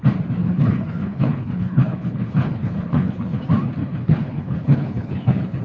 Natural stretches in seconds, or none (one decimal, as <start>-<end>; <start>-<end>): 0.0-0.4; 3.4-3.8